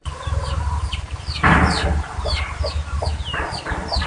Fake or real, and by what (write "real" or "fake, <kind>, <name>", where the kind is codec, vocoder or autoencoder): fake, vocoder, BigVGAN v2